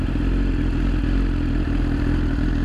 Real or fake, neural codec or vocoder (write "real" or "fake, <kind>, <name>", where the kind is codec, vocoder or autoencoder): fake, vocoder, BigVGAN v2